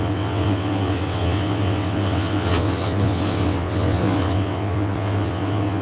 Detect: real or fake fake